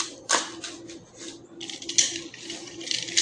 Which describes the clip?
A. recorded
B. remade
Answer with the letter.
A